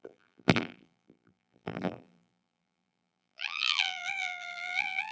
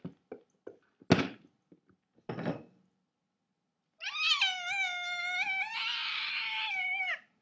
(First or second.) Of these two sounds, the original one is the second